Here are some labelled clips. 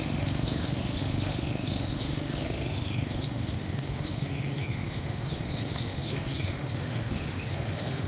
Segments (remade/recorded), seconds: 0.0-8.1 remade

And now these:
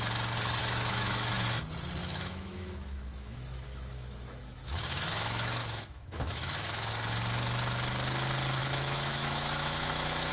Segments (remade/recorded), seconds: 0.0-0.6 recorded; 0.6-1.6 remade; 1.6-2.0 recorded; 2.0-6.9 remade; 6.9-8.6 recorded; 8.6-10.3 remade

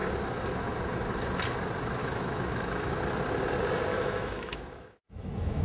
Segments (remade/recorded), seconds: 0.0-2.0 recorded; 2.0-2.9 remade; 2.9-3.9 recorded; 3.9-5.6 remade

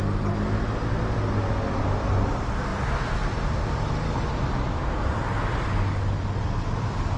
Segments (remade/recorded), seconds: 0.0-7.2 recorded

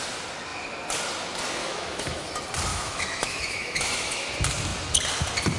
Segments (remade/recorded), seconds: 0.0-1.6 recorded; 1.6-2.3 remade; 2.3-2.7 recorded; 2.7-4.3 remade; 4.3-5.6 recorded

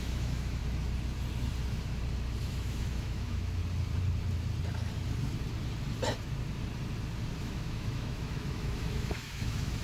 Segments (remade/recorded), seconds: 0.0-0.6 remade; 0.6-2.4 recorded; 2.4-3.6 remade; 3.6-7.4 recorded; 7.4-9.8 remade

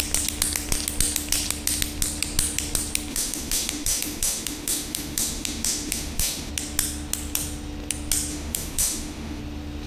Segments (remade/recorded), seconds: 0.0-3.1 recorded; 3.1-6.5 remade; 6.5-8.3 recorded; 8.3-9.4 remade; 9.4-9.9 recorded